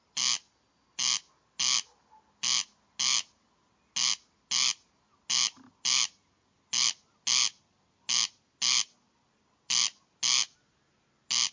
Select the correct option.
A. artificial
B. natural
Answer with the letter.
B